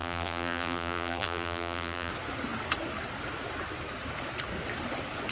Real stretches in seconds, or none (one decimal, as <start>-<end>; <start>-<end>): 2.1-5.3